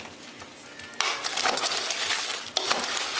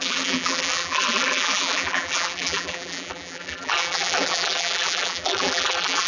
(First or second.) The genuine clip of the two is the first